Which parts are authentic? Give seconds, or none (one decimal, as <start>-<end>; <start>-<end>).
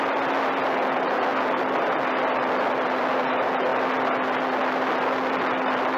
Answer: 0.0-6.0